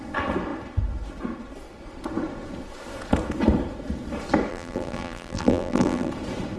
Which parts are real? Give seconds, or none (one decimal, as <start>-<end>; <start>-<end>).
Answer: 0.0-4.5; 6.1-6.6